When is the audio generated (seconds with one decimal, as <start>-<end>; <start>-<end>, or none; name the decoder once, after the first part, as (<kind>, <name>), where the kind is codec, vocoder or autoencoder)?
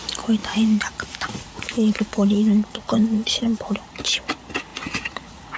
0.4-3.8 (vocoder, Vocos); 4.7-5.6